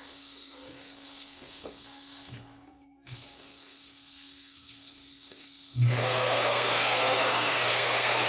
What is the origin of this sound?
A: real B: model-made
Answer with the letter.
B